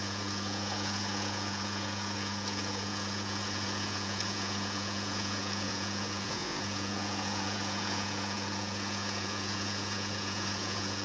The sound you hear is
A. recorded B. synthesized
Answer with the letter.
B